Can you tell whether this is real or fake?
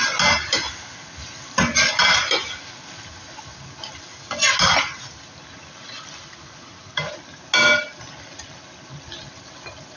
real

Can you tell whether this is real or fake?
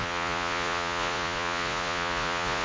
fake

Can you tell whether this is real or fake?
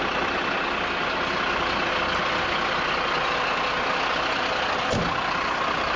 real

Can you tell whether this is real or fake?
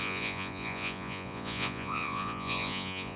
fake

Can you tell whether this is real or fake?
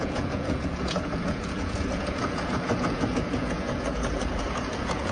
fake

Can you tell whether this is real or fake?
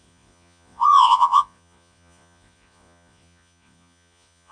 fake